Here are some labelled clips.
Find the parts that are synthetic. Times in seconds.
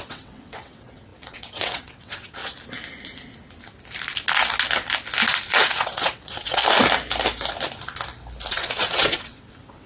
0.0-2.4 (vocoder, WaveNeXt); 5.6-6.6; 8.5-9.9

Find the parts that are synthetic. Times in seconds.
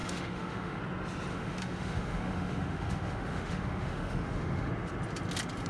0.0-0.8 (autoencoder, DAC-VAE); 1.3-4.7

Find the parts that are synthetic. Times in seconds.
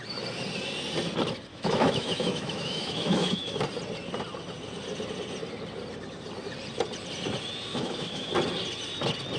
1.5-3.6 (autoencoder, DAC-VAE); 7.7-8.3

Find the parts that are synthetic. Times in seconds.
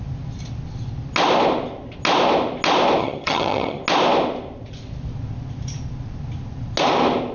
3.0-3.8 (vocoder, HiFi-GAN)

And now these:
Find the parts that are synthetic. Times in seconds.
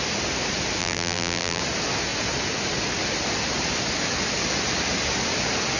0.8-1.6 (vocoder, BigVGAN v2)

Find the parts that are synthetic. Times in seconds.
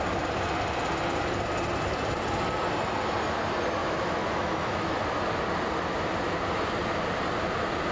3.8-5.0 (autoencoder, DAC-VAE)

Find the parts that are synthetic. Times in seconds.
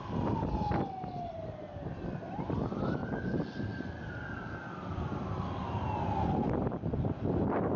none